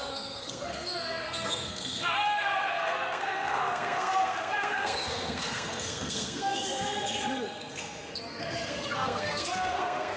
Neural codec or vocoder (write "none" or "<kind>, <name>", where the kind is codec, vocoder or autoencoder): codec, SNAC